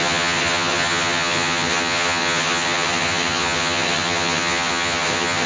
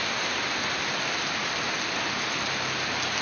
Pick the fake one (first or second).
first